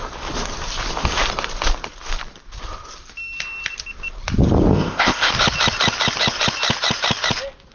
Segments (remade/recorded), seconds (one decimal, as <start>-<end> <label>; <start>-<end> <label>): 0.0-4.7 recorded; 4.7-5.3 remade; 5.3-7.7 recorded